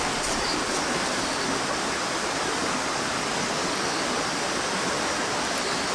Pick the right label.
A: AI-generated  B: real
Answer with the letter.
B